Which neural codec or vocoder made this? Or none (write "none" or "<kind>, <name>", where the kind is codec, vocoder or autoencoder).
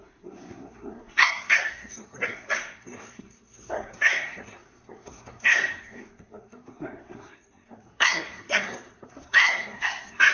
codec, SNAC